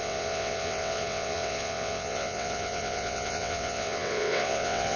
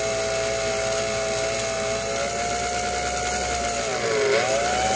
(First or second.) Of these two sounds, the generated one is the first